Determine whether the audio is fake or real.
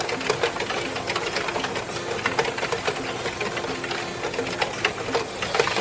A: real